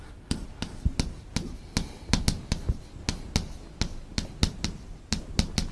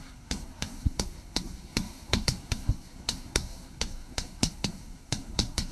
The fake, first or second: second